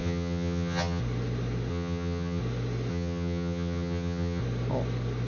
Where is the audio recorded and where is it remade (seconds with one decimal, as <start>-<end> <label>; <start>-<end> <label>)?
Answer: 0.0-1.0 remade; 1.0-1.7 recorded; 1.7-2.4 remade; 2.4-2.9 recorded; 2.9-4.4 remade; 4.4-5.3 recorded